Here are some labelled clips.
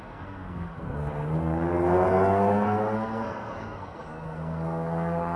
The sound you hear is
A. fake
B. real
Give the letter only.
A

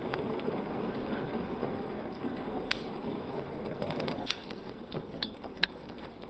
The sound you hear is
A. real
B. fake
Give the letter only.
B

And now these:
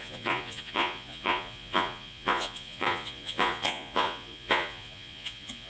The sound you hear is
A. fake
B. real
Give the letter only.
A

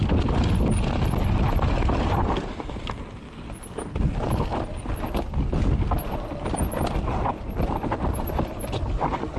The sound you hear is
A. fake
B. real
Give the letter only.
B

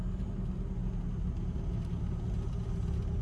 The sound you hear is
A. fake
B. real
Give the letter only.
B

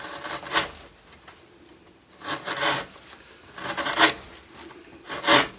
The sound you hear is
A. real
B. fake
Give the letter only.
A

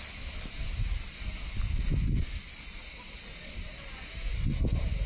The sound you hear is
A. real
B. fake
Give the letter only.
A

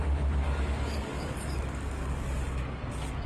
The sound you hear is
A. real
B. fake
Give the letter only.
B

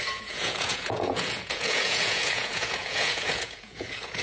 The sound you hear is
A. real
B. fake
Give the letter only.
B